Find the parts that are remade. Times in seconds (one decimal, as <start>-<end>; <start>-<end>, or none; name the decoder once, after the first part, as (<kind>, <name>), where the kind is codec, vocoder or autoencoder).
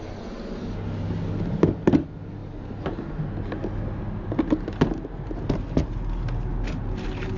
none